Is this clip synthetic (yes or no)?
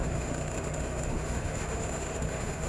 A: yes